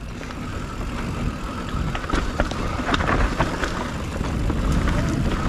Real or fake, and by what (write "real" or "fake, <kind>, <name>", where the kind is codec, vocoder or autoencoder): real